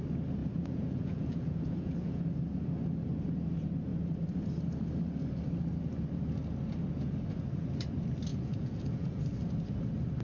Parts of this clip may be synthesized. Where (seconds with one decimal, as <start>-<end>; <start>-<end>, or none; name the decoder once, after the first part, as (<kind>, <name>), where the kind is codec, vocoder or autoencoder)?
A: 0.4-2.2 (vocoder, Vocos); 8.3-9.2